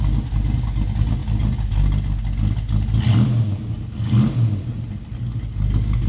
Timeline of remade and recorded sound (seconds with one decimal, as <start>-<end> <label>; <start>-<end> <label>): 0.0-6.1 recorded